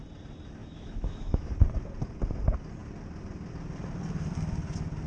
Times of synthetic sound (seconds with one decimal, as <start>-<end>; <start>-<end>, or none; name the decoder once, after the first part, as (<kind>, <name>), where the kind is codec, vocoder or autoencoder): 0.6-1.5 (autoencoder, DAC-VAE)